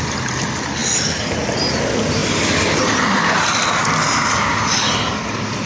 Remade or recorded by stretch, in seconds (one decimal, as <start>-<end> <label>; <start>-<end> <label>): 0.0-0.8 recorded; 0.8-1.6 remade; 1.6-5.7 recorded